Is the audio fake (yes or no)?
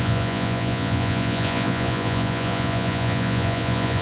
yes